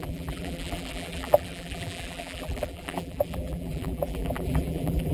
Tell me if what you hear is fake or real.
fake